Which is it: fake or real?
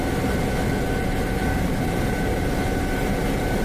fake